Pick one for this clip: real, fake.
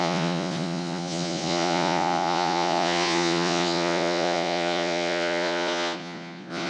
fake